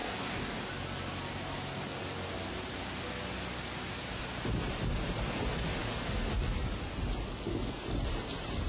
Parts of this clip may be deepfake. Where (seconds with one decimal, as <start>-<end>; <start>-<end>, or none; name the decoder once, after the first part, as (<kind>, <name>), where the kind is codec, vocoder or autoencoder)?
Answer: 0.0-0.6 (codec, DAC)